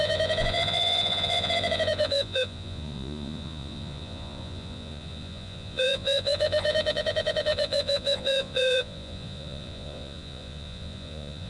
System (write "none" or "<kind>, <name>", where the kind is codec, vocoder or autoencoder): vocoder, Vocos